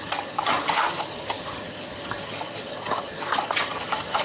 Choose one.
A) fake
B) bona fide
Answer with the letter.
A